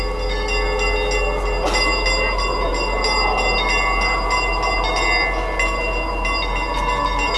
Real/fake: real